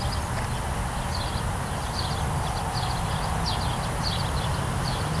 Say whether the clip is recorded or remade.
recorded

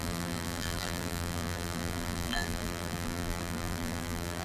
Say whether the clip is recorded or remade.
remade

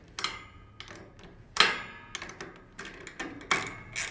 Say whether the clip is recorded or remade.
recorded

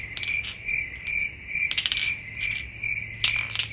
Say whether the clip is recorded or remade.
recorded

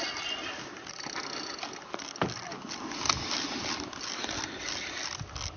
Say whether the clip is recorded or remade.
recorded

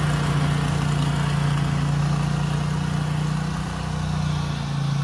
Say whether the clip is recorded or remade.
recorded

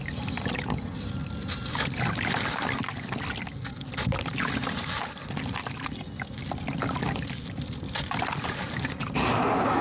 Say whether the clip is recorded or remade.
recorded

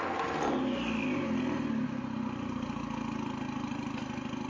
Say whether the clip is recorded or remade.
recorded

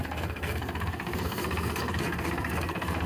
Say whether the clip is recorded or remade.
remade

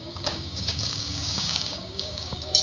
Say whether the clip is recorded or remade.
remade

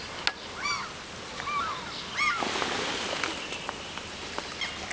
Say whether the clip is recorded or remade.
recorded